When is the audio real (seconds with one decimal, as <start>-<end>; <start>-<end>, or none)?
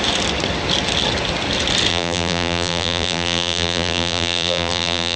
0.0-1.9